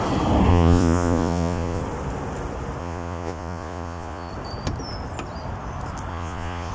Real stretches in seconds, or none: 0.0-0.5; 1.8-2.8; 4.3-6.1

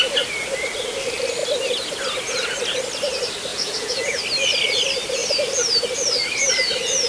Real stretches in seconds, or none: 0.0-3.5; 4.2-7.1

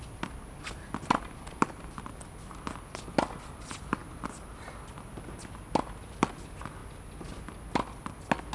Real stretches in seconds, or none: 0.0-8.5

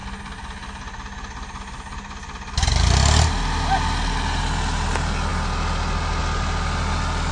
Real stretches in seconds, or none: 0.0-7.3